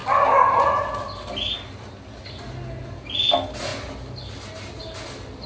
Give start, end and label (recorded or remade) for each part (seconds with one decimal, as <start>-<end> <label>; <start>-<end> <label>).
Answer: 0.0-5.5 recorded